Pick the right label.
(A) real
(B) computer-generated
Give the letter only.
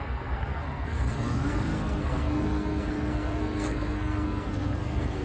B